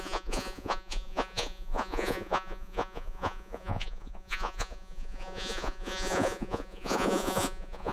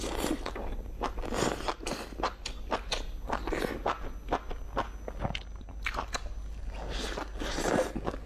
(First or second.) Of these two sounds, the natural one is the second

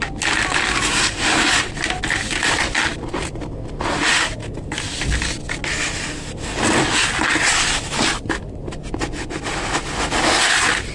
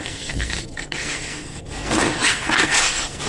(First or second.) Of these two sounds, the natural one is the first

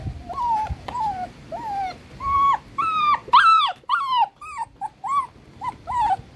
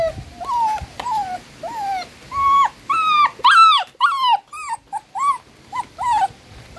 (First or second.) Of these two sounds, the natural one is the second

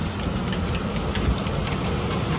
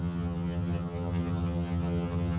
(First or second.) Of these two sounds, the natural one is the first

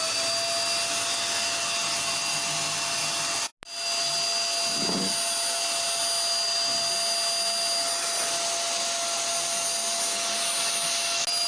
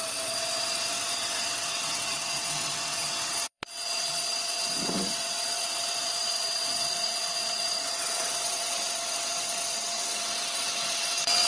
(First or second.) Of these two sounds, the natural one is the first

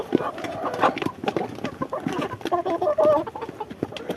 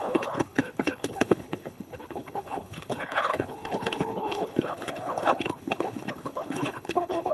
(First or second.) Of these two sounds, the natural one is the first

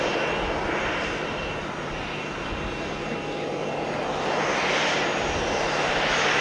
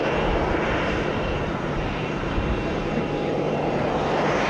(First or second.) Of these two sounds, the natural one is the first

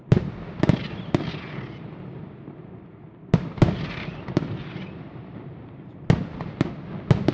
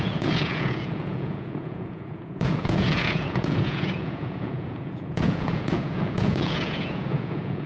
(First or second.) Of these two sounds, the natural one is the first